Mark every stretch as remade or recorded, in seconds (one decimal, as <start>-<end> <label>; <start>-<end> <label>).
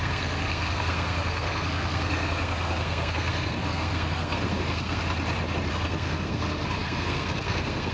0.0-5.0 remade; 5.0-5.7 recorded; 5.7-7.9 remade